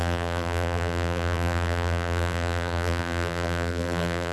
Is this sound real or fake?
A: fake